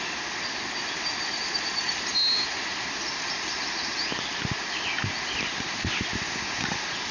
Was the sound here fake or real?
real